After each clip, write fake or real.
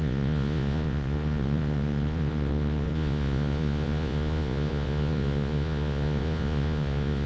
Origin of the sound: fake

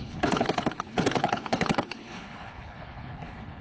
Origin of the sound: fake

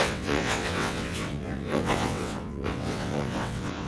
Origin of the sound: fake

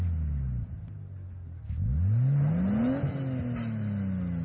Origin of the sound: real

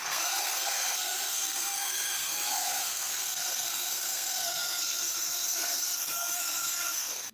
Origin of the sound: fake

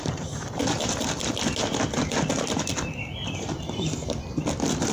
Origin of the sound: real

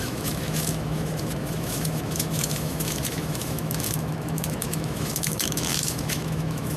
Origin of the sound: fake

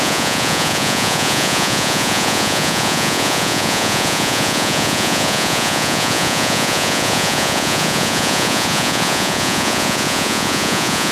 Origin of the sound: fake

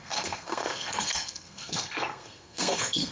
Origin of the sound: fake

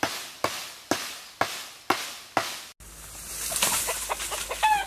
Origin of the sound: real